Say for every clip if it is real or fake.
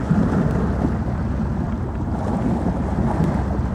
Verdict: real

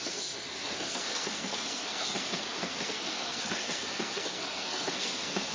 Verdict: fake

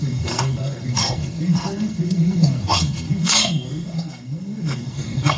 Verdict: fake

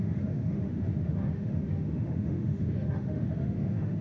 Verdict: fake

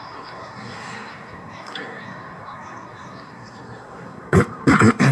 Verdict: fake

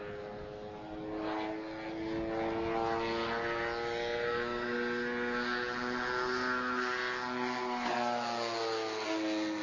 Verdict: real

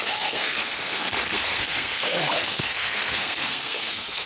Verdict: fake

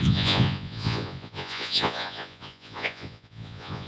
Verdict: fake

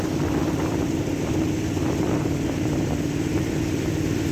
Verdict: real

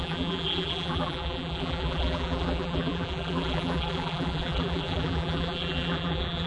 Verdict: fake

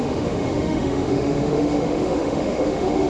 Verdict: fake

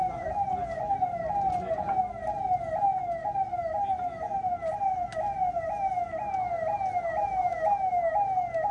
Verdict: real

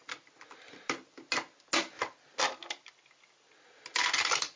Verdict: real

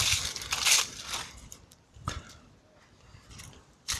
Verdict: fake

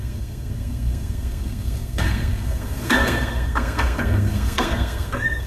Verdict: fake